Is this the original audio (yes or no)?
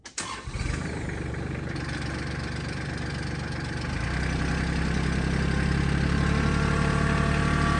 yes